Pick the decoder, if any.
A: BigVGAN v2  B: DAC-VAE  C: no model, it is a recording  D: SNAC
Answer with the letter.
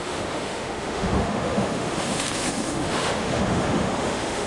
B